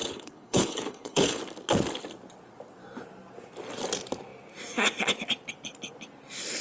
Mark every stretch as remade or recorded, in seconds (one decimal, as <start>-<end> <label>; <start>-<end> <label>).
0.0-1.4 remade; 1.4-6.6 recorded